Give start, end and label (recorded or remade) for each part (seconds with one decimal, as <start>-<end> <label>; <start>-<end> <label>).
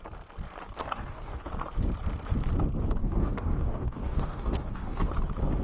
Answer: 0.0-0.8 recorded; 0.8-1.4 remade; 1.4-3.0 recorded; 3.0-5.1 remade; 5.1-5.6 recorded